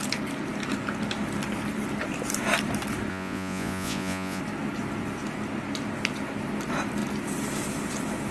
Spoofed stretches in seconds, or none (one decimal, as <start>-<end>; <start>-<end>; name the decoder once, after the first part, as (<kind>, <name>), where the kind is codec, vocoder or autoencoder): 3.1-4.4 (vocoder, Vocos)